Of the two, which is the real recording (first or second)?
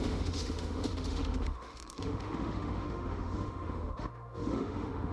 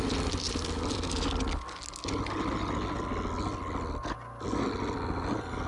second